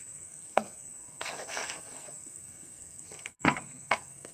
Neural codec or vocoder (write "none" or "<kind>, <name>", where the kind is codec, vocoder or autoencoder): codec, SNAC